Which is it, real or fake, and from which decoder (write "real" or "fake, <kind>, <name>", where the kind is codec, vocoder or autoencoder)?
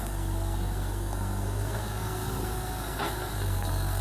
fake, codec, SNAC